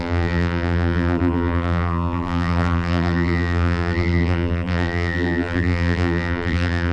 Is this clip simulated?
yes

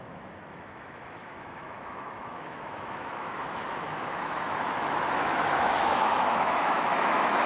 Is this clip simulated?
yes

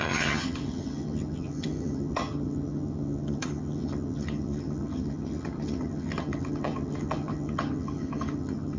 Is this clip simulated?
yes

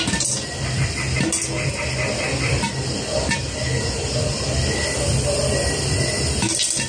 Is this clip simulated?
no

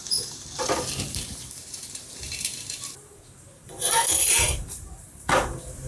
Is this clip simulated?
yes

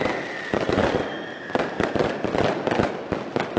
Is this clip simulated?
no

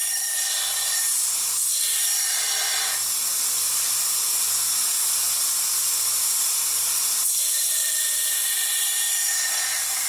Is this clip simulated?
yes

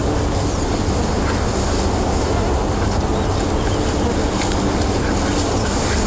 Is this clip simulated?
no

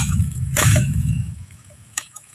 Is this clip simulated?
yes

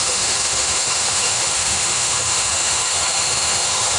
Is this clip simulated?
yes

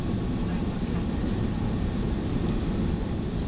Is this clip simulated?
no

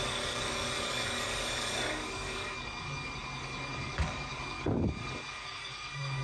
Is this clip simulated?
yes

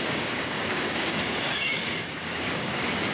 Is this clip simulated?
yes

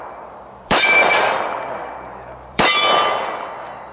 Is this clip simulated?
yes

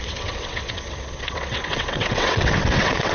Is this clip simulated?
yes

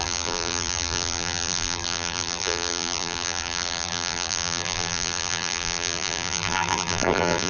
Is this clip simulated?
yes